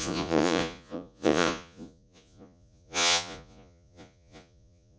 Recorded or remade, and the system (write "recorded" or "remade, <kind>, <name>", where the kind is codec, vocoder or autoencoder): remade, vocoder, Vocos